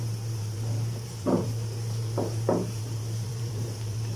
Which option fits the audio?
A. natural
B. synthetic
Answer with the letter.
B